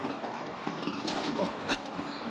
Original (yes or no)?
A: no